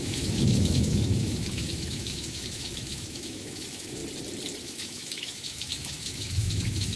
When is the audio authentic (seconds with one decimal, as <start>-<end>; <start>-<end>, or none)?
4.0-4.6